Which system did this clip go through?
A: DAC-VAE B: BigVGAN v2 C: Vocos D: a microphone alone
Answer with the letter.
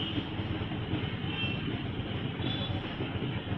D